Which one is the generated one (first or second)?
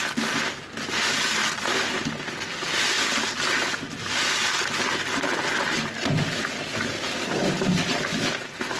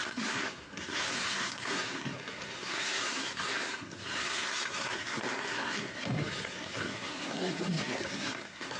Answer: second